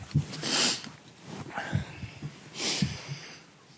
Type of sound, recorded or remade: recorded